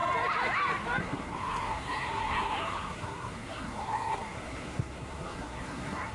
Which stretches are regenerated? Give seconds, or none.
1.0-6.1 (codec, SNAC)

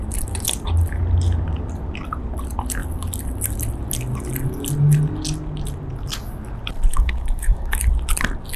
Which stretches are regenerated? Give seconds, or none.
6.9-7.8 (codec, DAC)

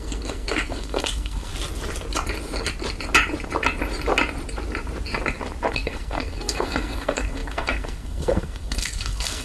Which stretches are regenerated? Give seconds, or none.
0.0-1.5 (codec, SNAC); 5.7-9.4